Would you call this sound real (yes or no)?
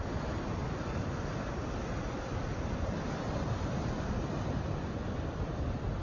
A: yes